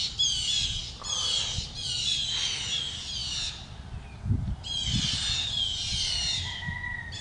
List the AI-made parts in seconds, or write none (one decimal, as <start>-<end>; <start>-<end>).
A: none